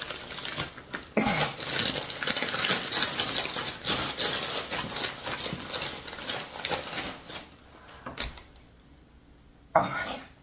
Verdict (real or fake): real